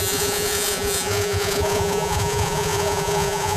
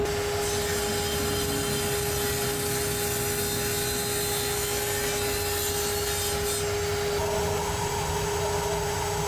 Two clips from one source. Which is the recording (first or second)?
second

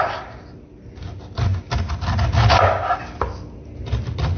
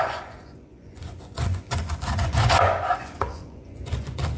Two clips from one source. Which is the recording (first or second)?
first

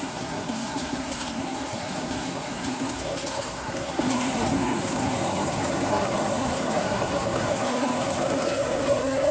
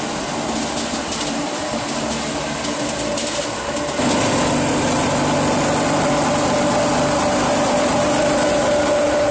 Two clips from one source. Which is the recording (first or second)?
second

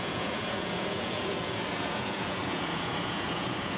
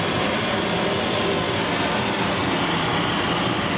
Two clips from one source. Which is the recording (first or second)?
second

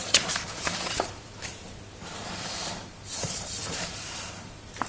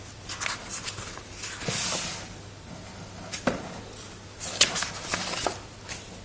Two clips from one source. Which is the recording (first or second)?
second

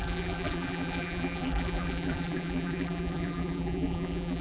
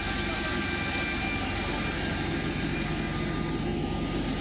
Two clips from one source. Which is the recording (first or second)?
second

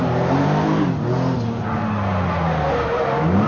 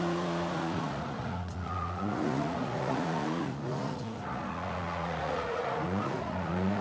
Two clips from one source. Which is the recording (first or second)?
first